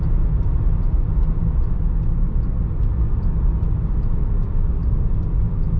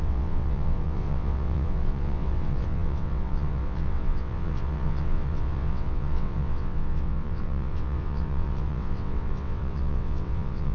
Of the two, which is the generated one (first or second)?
second